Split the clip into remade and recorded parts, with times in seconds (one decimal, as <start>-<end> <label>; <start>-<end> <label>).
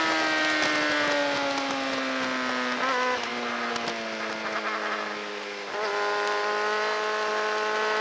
0.0-8.0 recorded